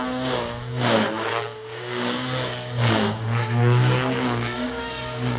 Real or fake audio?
fake